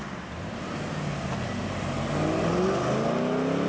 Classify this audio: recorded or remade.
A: recorded